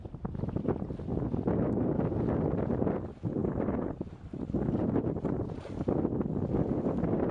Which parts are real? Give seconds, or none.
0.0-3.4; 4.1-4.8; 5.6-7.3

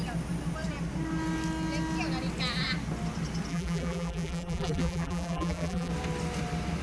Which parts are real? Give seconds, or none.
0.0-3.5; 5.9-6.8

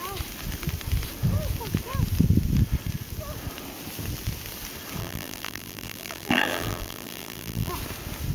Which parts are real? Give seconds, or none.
0.0-5.0; 7.7-8.3

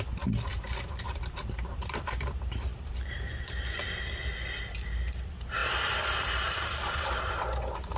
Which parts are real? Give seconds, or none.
0.0-0.5; 3.8-5.6; 6.7-8.0

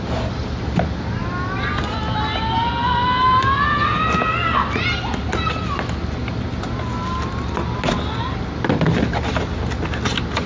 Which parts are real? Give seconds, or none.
0.0-10.5

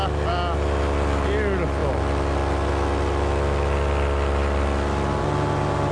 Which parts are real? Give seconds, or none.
0.0-5.9